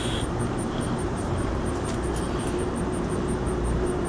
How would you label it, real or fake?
fake